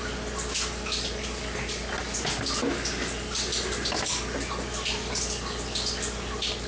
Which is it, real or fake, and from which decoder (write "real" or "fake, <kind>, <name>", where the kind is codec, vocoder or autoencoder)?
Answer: real